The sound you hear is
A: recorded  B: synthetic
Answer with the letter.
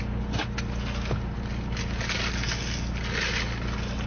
A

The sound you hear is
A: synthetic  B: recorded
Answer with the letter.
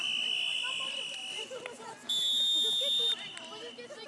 B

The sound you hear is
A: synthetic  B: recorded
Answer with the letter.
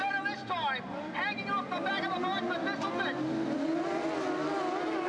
B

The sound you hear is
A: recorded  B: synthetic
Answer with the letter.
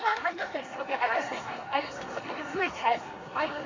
B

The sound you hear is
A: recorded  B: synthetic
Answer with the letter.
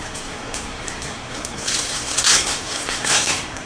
B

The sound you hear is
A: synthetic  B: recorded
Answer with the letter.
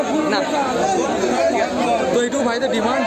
B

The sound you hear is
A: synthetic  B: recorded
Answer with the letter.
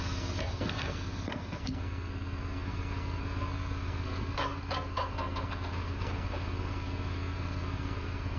A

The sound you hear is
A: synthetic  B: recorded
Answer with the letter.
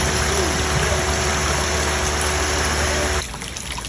B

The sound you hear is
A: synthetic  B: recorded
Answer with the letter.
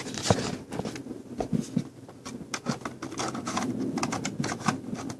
B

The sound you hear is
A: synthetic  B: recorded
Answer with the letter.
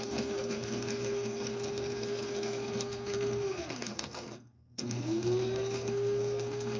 A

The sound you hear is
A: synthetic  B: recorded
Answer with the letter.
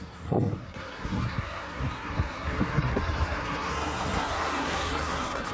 A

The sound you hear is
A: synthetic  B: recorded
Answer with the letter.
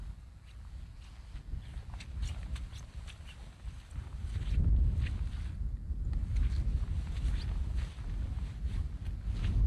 B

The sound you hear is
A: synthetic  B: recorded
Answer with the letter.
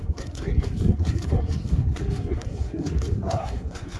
A